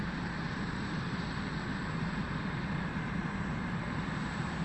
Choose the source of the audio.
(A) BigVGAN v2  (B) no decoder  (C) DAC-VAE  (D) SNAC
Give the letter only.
B